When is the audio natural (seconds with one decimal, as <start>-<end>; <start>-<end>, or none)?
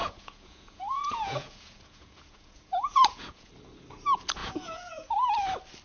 3.5-4.4; 5.3-5.8